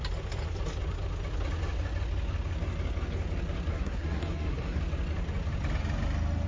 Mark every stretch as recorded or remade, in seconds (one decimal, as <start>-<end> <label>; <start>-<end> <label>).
0.0-3.7 recorded; 3.7-4.8 remade; 4.8-6.5 recorded

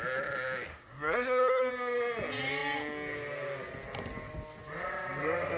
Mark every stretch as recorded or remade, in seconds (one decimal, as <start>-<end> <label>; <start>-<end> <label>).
0.0-0.7 recorded; 0.7-1.7 remade; 1.7-5.6 recorded

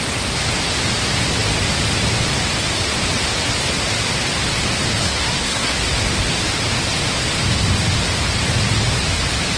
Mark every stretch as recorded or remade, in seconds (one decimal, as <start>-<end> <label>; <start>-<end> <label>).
0.0-5.0 recorded; 5.0-5.7 remade; 5.7-9.6 recorded

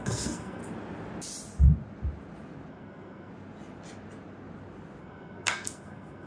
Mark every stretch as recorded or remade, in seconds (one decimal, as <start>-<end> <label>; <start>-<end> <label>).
0.0-0.6 remade; 0.6-2.7 recorded; 2.7-3.3 remade; 3.3-5.0 recorded; 5.0-6.3 remade

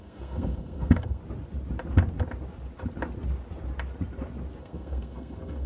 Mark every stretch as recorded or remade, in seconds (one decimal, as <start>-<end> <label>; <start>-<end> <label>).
0.0-1.2 remade; 1.2-4.6 recorded; 4.6-5.7 remade

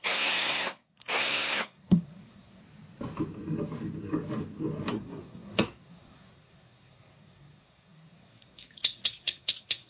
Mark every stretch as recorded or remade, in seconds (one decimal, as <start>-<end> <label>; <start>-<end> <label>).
0.0-2.6 remade; 2.6-4.9 recorded; 4.9-9.9 remade